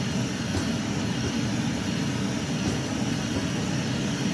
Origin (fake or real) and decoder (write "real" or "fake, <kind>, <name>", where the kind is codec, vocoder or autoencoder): real